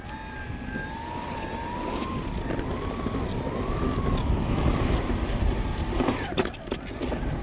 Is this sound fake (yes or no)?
no